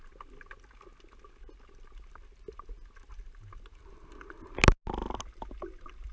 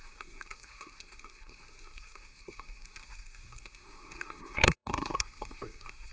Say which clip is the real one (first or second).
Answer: first